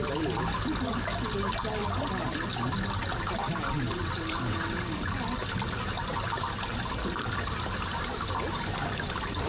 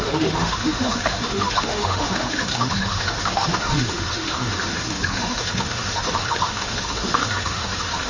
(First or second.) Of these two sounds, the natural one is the first